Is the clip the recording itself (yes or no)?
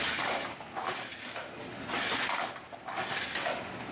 yes